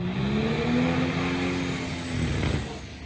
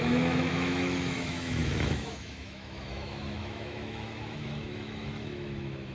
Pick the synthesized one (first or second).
second